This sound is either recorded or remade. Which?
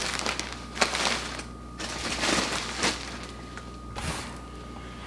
recorded